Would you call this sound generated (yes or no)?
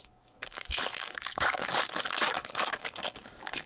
yes